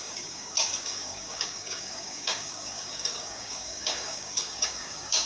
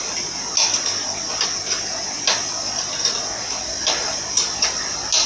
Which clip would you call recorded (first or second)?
second